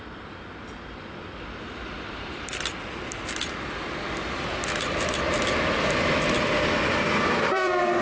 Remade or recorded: remade